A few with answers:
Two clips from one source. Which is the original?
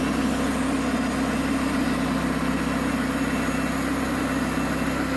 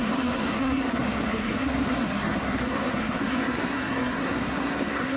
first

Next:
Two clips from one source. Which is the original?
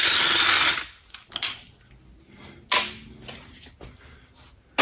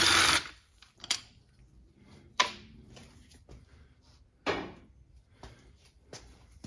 first